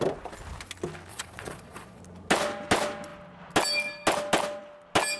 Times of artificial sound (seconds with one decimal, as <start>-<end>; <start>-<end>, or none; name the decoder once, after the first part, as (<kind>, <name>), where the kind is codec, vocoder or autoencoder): 1.1-2.0 (vocoder, Vocos)